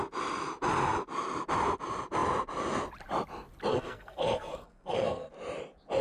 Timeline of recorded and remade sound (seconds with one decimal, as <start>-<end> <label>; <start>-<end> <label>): 0.0-3.7 recorded; 3.7-5.3 remade; 5.3-6.0 recorded